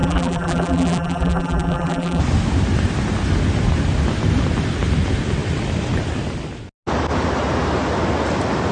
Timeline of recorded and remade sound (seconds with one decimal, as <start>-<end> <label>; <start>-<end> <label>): 0.0-2.2 remade; 2.2-8.7 recorded